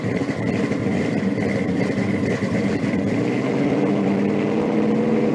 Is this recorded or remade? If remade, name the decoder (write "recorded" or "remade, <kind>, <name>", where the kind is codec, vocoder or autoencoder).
remade, vocoder, BigVGAN v2